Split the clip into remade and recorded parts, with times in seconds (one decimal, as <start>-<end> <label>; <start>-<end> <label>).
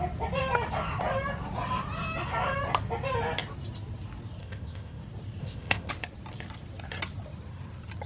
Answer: 0.0-4.4 recorded; 4.4-5.0 remade; 5.0-5.4 recorded; 5.4-5.9 remade; 5.9-8.1 recorded